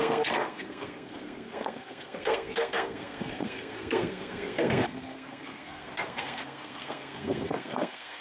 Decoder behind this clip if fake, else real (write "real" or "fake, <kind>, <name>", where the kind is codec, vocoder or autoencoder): fake, codec, SNAC